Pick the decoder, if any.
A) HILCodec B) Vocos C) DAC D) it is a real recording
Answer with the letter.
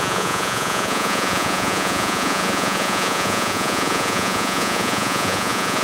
B